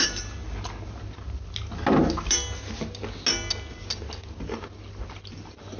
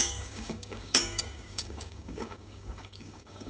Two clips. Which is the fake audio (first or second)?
second